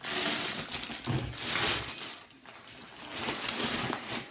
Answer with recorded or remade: recorded